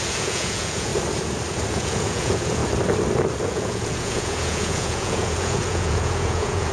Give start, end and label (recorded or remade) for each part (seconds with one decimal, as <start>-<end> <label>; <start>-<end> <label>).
0.0-0.9 remade; 0.9-1.7 recorded; 1.7-2.6 remade; 2.6-3.4 recorded; 3.4-6.7 remade